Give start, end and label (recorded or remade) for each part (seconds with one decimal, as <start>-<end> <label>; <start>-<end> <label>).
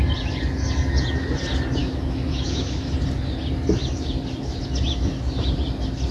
0.0-1.8 recorded; 1.8-2.9 remade; 2.9-6.1 recorded